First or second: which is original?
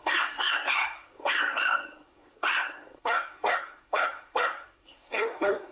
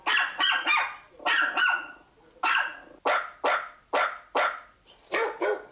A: second